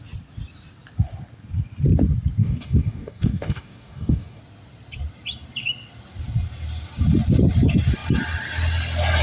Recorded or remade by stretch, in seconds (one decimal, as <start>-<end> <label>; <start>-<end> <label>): 0.0-2.4 recorded; 2.4-4.4 remade; 4.4-9.2 recorded